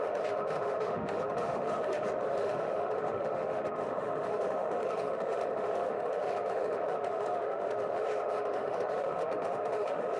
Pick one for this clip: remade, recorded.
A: remade